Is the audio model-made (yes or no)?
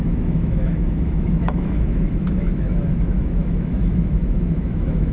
yes